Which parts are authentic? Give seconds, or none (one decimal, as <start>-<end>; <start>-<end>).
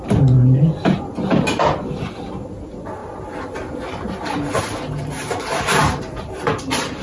0.0-7.0